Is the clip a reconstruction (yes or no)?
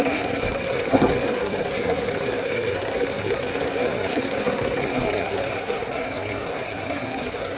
yes